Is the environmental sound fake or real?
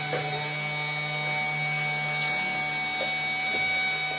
real